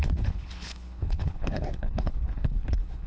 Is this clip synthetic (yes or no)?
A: yes